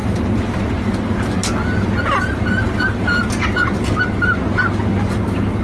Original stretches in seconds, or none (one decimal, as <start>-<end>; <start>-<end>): 0.0-5.6